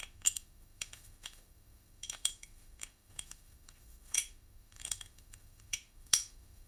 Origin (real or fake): fake